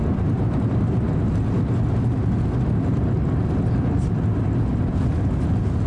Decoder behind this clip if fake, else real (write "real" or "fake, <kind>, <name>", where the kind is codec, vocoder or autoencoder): real